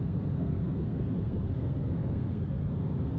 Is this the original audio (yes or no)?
no